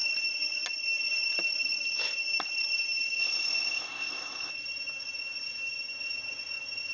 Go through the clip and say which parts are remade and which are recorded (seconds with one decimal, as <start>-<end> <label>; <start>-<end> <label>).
0.0-3.2 recorded; 3.2-4.5 remade; 4.5-6.9 recorded